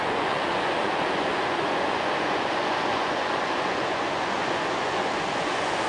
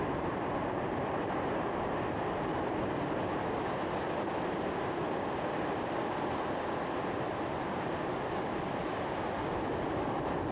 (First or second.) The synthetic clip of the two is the first